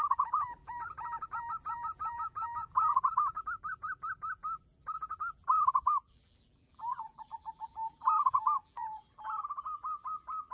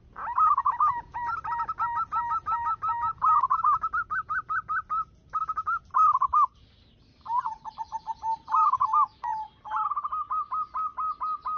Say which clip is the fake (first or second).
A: first